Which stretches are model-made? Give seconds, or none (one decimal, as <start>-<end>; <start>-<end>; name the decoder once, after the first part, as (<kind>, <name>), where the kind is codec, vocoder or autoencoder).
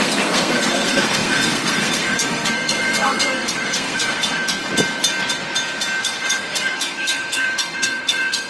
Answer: 0.0-4.6 (codec, SNAC); 6.0-8.5